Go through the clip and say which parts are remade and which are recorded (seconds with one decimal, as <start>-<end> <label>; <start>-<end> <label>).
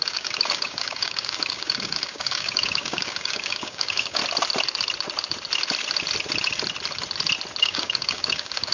0.0-4.2 remade; 4.2-7.6 recorded; 7.6-8.7 remade